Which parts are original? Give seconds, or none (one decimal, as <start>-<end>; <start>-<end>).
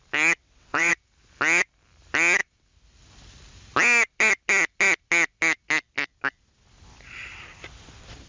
0.0-0.4; 0.9-8.3